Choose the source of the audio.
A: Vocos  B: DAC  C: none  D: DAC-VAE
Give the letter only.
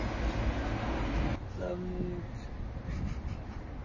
C